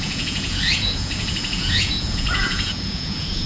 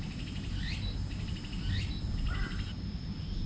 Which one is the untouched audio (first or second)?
second